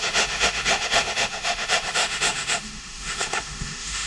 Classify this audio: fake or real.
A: fake